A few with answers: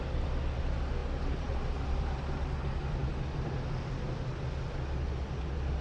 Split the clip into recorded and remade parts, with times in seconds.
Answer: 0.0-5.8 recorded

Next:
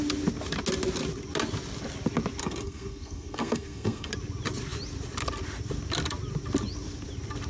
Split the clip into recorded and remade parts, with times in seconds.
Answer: 0.0-2.4 recorded; 2.4-4.1 remade; 4.1-7.5 recorded

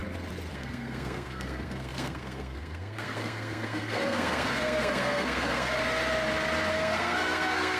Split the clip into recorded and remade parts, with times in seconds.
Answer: 0.0-0.5 recorded; 0.5-5.8 remade; 5.8-6.7 recorded; 6.7-7.8 remade

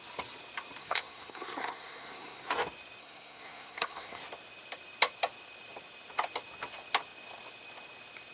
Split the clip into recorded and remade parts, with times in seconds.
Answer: 0.0-0.8 recorded; 0.8-2.5 remade; 2.5-3.0 recorded; 3.0-4.2 remade; 4.2-8.3 recorded